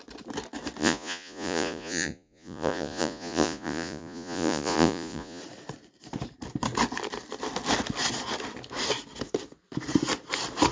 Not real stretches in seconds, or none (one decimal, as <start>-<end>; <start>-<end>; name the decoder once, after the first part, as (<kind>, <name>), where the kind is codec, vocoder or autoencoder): 0.8-5.4 (vocoder, Vocos)